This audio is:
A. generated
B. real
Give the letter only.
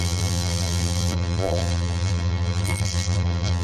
A